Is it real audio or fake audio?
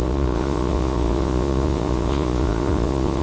fake